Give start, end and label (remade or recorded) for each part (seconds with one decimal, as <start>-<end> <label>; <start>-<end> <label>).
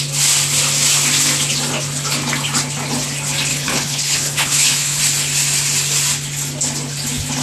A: 0.0-3.5 recorded; 3.5-5.0 remade; 5.0-7.4 recorded